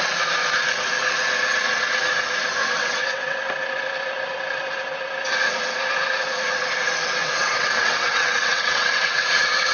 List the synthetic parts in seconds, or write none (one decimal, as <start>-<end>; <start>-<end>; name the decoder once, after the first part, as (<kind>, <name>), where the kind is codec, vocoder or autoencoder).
2.6-3.4 (vocoder, WaveNeXt); 7.2-9.7